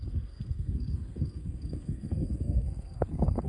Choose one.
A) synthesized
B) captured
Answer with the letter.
A